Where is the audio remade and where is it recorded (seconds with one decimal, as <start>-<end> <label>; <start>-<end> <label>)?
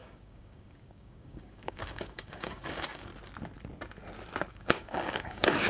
0.0-3.1 remade; 3.1-4.5 recorded; 4.5-5.7 remade